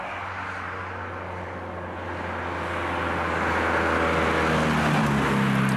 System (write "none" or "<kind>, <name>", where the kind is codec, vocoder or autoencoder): none